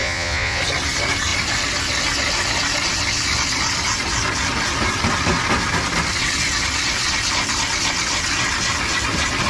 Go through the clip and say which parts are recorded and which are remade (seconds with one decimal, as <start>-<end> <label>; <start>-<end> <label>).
0.0-0.6 remade; 0.6-9.5 recorded